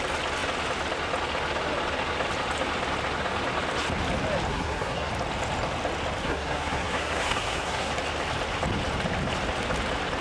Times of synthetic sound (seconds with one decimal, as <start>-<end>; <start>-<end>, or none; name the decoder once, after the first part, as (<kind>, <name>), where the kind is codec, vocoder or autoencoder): 4.5-5.1 (codec, SNAC); 6.2-7.9